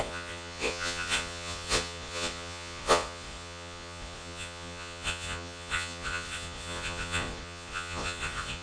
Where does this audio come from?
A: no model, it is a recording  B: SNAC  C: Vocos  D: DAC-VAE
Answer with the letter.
C